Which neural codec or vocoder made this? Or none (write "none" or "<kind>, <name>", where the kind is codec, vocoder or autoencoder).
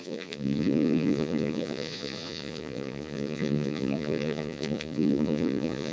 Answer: vocoder, Vocos